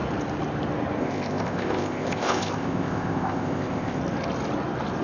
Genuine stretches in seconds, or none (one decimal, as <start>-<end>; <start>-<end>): 0.0-1.0; 4.0-5.0